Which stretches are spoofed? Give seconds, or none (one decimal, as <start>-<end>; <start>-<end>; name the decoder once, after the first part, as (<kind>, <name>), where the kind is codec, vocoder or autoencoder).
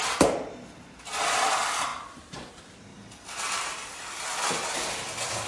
none